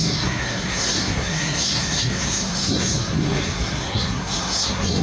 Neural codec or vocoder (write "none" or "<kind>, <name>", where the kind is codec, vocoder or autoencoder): codec, SNAC